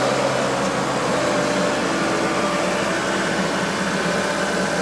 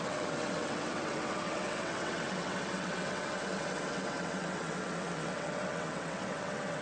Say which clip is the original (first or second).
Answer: first